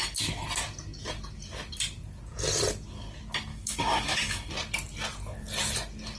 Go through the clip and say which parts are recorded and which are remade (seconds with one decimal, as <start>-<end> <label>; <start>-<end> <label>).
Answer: 0.0-3.5 recorded; 3.5-4.5 remade; 4.5-6.2 recorded